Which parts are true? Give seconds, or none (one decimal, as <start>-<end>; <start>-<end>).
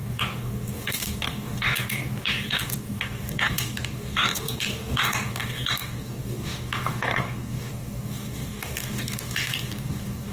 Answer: none